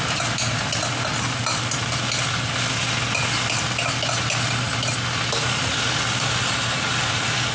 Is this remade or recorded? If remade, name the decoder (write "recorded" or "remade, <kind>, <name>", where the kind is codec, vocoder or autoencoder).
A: recorded